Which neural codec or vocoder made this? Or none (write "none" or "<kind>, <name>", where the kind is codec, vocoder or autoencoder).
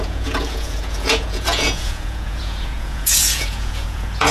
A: vocoder, Vocos